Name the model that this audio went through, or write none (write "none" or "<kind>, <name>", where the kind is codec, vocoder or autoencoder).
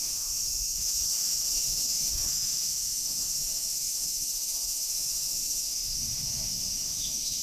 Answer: autoencoder, DAC-VAE